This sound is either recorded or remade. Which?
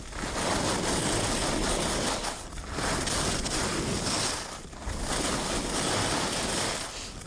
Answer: recorded